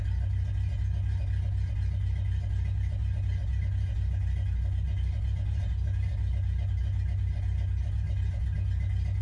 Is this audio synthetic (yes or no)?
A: no